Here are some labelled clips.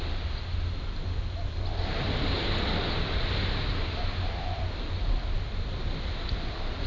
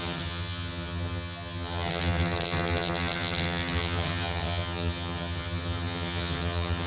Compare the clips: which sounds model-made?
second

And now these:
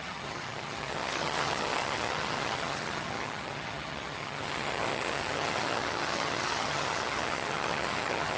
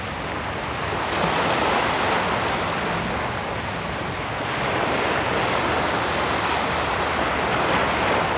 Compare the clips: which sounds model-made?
first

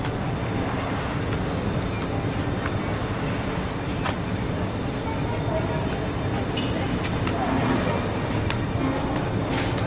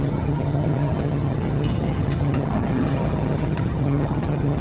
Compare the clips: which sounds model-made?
second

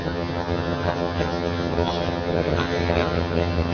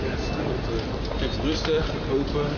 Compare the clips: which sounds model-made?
first